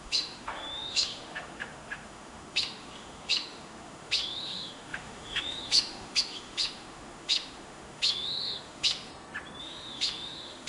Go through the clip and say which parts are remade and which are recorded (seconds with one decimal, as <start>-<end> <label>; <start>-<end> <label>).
0.0-9.1 remade; 9.1-9.6 recorded; 9.6-10.7 remade